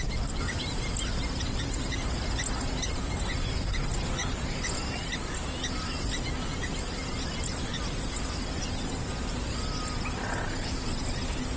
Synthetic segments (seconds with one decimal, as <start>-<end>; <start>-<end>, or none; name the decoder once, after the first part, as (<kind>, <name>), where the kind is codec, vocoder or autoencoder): none